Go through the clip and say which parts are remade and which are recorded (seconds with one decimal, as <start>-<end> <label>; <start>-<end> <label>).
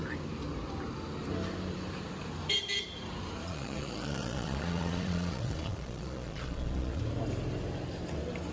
0.0-3.4 recorded; 3.4-7.0 remade; 7.0-8.5 recorded